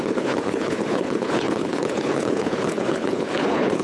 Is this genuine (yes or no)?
no